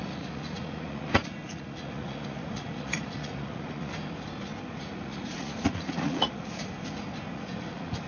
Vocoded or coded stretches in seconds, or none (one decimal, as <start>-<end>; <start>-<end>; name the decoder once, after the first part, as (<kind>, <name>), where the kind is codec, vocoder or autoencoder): 0.0-3.9 (vocoder, Vocos); 4.8-6.7; 7.3-8.1